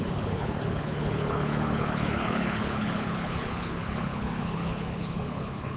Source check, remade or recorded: remade